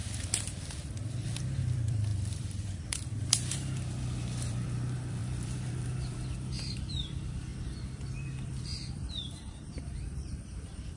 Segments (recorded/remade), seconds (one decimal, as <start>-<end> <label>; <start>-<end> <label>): 0.0-1.6 recorded; 1.6-11.0 remade